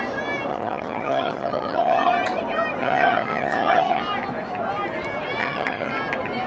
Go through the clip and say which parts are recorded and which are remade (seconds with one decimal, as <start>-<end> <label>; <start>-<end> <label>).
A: 0.0-0.5 recorded; 0.5-2.1 remade; 2.1-2.8 recorded; 2.8-4.0 remade; 4.0-5.4 recorded; 5.4-5.9 remade; 5.9-6.5 recorded